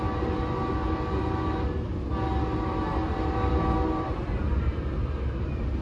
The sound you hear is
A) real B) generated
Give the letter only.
A